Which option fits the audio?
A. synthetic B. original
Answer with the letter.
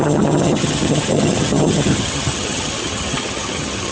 A